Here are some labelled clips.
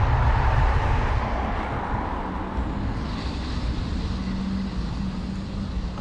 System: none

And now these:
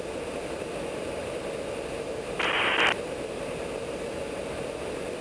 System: none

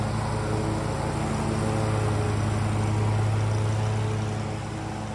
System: none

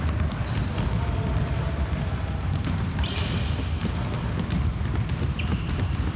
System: none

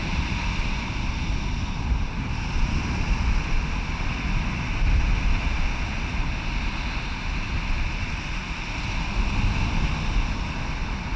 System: none